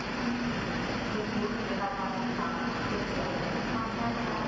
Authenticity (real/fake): real